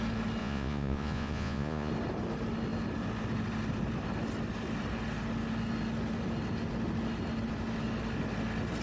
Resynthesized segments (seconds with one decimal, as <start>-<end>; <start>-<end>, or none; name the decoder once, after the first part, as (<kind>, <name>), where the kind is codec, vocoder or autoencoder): 0.4-1.9 (vocoder, Vocos)